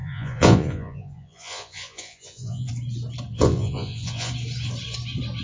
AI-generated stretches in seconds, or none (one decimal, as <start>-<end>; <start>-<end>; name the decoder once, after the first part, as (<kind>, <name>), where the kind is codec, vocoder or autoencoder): 0.0-2.7 (vocoder, Vocos); 3.3-4.3

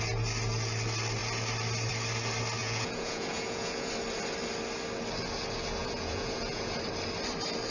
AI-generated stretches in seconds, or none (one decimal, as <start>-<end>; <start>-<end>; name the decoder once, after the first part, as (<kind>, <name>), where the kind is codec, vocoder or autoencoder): 2.6-3.9 (vocoder, Vocos); 5.8-6.8

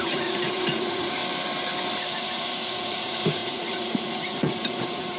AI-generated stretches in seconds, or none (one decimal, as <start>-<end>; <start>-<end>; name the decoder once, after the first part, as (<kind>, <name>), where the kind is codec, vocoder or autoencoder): 0.0-1.2 (vocoder, Vocos); 2.1-5.2

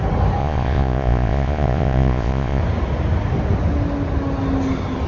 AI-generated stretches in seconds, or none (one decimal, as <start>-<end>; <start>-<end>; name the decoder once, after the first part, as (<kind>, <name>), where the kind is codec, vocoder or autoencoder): 0.4-2.6 (vocoder, Vocos)

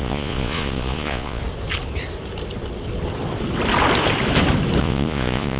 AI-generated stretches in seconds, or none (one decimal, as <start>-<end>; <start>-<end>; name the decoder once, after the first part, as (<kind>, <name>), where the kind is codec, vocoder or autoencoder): 0.0-1.4 (vocoder, Vocos); 4.8-5.6

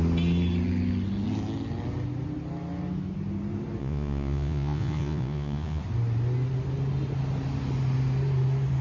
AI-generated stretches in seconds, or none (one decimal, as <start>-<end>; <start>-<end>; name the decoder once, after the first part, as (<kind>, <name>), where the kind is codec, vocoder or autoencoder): 3.8-5.8 (vocoder, Vocos)

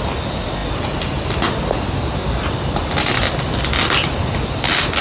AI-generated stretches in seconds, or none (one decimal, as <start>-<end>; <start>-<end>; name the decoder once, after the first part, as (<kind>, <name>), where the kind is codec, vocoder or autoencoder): none